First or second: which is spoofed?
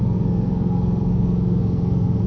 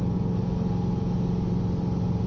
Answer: first